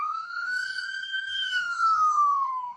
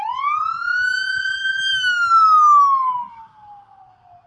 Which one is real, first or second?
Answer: second